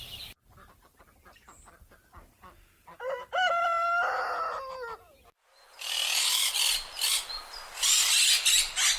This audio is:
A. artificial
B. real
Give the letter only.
B